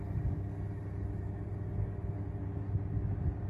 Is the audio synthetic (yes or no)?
no